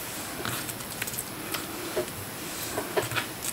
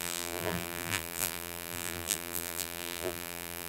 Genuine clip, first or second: first